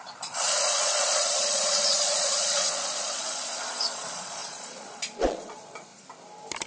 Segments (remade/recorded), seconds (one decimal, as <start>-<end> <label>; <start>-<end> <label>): 0.0-5.9 remade; 5.9-6.7 recorded